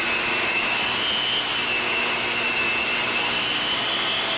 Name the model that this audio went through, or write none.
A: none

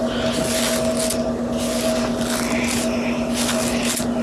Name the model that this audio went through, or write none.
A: none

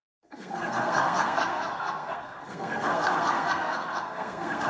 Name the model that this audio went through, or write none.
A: codec, SNAC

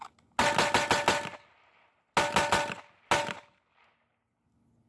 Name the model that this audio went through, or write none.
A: none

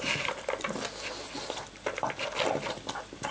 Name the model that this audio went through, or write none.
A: none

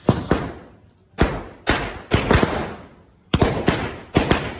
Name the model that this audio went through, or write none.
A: none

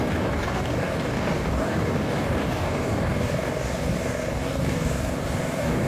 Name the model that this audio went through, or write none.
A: codec, DAC